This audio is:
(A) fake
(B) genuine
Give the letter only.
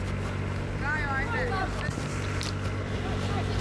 B